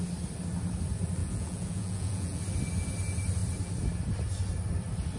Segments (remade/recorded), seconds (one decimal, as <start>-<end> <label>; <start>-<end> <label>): 0.0-1.2 recorded; 1.2-2.4 remade; 2.4-5.2 recorded